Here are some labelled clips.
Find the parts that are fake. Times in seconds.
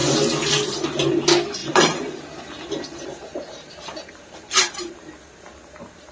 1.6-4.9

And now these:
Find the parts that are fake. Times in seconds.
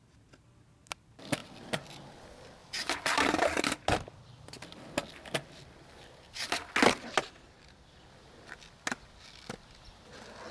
2.6-3.6